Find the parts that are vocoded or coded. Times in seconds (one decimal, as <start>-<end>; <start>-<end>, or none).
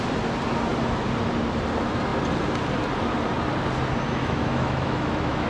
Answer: 4.2-5.5